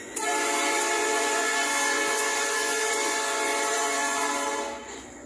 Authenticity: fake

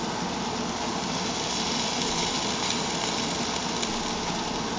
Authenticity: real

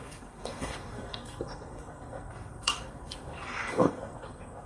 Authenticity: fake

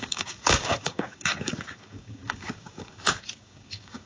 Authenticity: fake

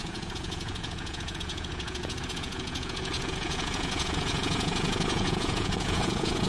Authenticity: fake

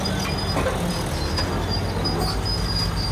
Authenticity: real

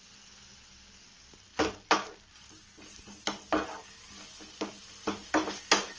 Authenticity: real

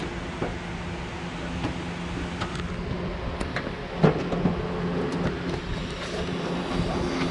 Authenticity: real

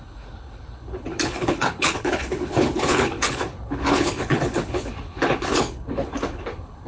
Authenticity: fake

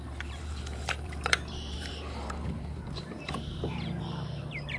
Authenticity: fake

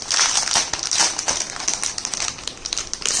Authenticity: real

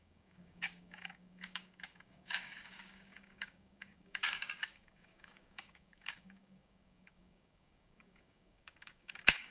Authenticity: fake